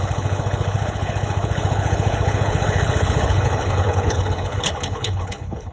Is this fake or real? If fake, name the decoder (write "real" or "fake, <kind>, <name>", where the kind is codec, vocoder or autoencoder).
fake, codec, HILCodec